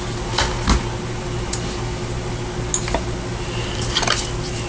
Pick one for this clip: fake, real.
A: real